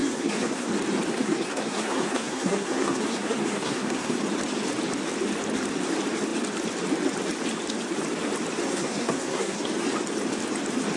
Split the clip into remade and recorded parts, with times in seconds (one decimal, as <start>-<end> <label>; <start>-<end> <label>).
0.0-0.7 remade; 0.7-1.1 recorded; 1.1-4.2 remade; 4.2-8.7 recorded; 8.7-9.6 remade; 9.6-11.0 recorded